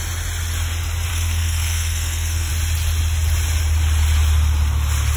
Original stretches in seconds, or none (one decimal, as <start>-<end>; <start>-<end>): 0.0-1.1; 2.5-5.2